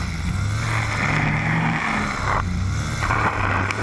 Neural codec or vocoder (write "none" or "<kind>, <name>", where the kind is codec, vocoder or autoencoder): none